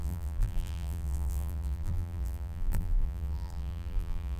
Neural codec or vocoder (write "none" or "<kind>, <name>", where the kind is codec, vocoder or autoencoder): vocoder, BigVGAN v2